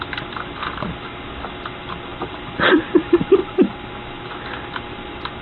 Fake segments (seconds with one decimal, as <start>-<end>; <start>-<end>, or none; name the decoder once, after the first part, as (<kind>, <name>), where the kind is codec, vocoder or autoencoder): 2.1-2.8 (vocoder, BigVGAN v2); 3.4-3.9